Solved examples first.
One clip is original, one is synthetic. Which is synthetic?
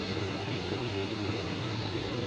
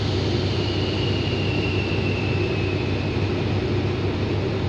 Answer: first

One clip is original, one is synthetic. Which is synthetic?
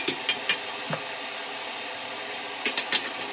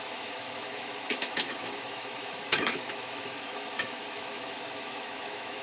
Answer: second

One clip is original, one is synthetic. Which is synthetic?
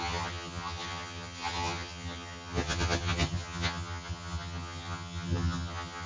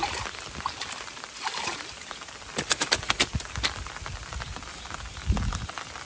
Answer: first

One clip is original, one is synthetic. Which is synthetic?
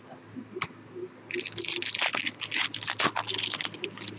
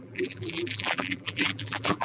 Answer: second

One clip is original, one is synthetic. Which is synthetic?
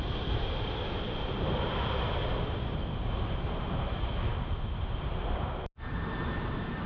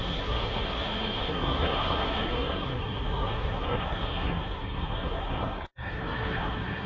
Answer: second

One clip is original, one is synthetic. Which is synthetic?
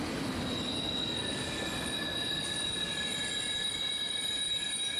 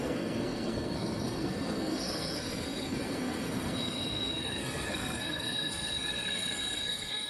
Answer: second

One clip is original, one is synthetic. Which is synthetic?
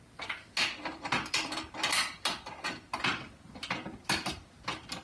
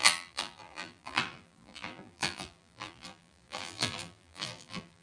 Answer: second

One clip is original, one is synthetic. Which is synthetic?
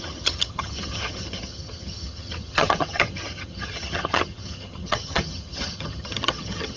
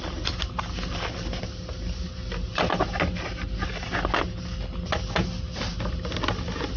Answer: first